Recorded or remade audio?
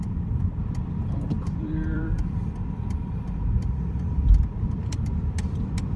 remade